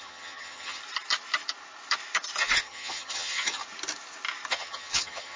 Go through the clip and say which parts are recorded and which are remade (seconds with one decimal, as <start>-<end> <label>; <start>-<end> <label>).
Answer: 0.0-0.8 remade; 0.8-2.4 recorded; 2.4-3.6 remade; 3.6-4.5 recorded; 4.5-5.4 remade